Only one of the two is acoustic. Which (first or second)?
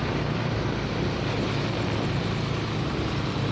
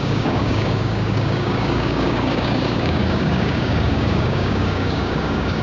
first